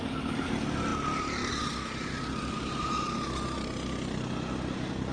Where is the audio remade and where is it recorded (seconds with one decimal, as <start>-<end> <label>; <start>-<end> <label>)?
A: 0.0-5.1 recorded